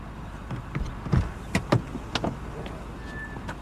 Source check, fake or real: real